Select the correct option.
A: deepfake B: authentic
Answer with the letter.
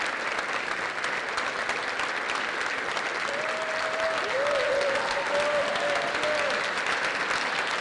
B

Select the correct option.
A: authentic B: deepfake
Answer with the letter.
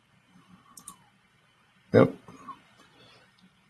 B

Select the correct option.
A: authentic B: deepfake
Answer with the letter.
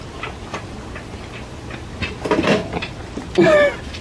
A